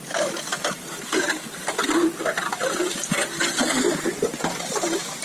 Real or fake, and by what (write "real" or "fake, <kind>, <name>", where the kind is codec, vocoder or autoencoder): real